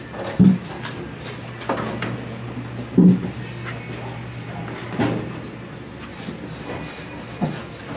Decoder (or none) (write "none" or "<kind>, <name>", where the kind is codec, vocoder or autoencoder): none